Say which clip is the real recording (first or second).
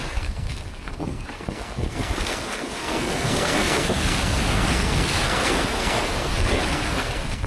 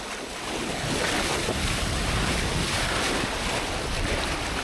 second